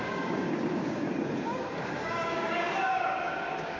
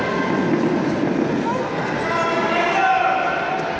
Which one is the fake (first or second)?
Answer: first